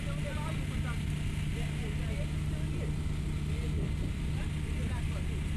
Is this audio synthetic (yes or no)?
no